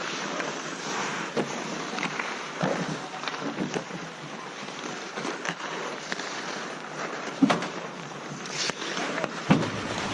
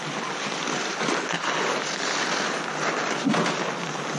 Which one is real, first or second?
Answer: second